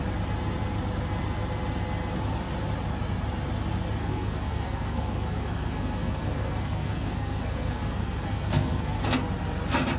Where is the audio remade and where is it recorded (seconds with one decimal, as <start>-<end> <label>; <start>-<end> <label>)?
0.0-4.0 recorded; 4.0-9.0 remade; 9.0-10.0 recorded